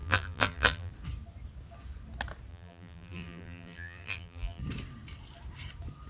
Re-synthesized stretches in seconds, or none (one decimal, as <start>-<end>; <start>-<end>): 0.0-0.9; 2.5-4.6